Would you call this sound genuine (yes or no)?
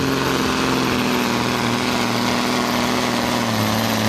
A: yes